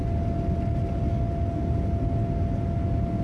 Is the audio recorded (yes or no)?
yes